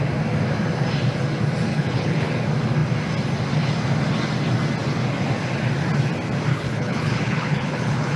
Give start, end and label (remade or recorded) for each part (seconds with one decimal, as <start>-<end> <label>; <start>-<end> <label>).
0.0-1.7 recorded; 1.7-2.3 remade; 2.3-6.5 recorded; 6.5-8.2 remade